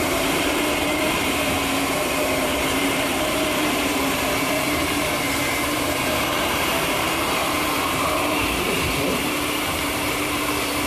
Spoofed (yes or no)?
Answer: yes